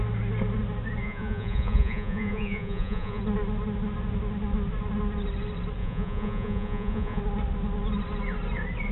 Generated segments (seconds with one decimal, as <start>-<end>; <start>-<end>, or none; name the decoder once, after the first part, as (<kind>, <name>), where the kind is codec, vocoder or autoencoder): 1.0-3.2 (vocoder, Vocos); 5.8-7.2